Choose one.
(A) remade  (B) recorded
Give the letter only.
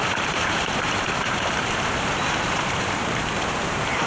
A